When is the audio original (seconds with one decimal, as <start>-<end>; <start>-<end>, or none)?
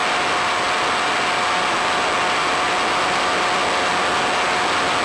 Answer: 0.0-5.0